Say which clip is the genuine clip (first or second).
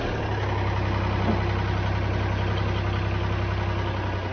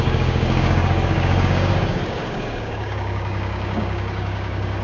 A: first